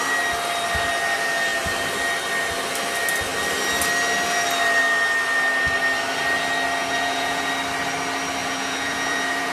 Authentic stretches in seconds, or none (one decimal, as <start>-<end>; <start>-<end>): 0.0-6.8; 7.5-8.4